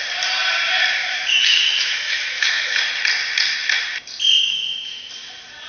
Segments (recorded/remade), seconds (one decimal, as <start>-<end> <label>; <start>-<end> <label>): 0.0-1.0 recorded; 1.0-2.8 remade; 2.8-4.4 recorded; 4.4-5.1 remade; 5.1-5.7 recorded